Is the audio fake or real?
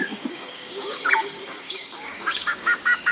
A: fake